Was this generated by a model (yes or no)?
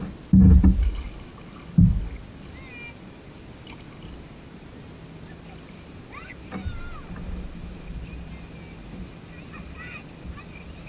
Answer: no